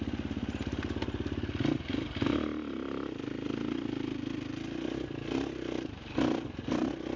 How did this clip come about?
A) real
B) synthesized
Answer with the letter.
A